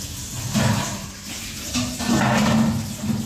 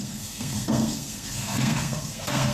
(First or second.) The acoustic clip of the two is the first